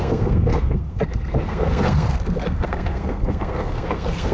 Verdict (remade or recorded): remade